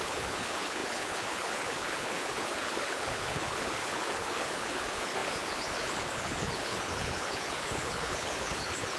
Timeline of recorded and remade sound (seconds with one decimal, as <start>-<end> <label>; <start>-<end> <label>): 0.0-9.0 remade